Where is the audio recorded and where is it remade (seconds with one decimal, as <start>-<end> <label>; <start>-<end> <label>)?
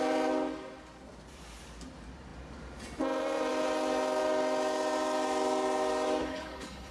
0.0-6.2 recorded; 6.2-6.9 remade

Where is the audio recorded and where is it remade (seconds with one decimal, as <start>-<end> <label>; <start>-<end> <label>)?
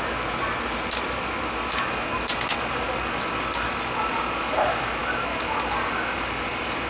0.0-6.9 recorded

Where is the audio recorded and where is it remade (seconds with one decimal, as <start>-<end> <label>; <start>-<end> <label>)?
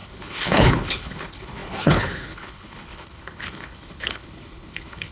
0.0-5.1 remade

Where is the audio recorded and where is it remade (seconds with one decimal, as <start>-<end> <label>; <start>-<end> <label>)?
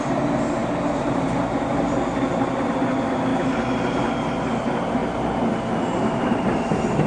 0.0-7.1 recorded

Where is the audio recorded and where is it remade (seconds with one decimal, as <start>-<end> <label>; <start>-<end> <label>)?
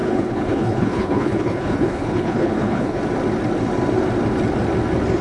0.0-3.0 remade; 3.0-5.2 recorded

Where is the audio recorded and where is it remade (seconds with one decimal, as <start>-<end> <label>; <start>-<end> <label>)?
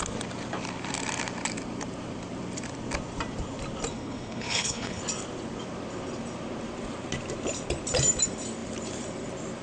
0.0-3.9 recorded; 3.9-5.0 remade; 5.0-9.6 recorded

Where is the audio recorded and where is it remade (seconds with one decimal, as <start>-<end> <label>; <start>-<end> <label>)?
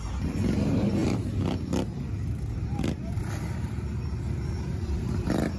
0.0-5.6 recorded